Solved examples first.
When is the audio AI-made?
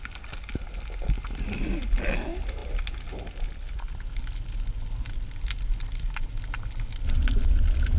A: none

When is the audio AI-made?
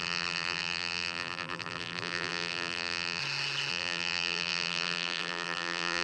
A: 0.0-3.2 (vocoder, BigVGAN v2); 3.7-6.0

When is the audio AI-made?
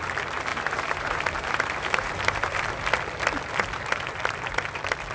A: 0.5-2.6 (vocoder, BigVGAN v2)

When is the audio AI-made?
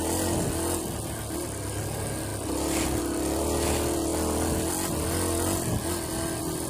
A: none